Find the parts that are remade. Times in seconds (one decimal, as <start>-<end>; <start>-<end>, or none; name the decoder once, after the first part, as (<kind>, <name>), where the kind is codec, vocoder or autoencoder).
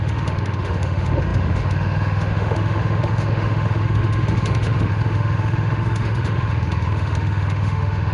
0.0-8.1 (autoencoder, DAC-VAE)